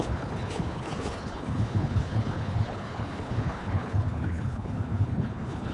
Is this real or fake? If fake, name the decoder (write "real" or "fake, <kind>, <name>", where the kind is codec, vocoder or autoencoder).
fake, codec, HILCodec